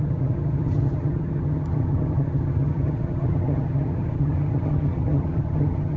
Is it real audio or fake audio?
fake